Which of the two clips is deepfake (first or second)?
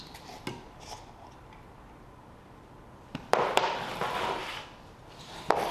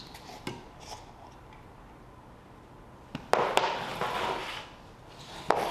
first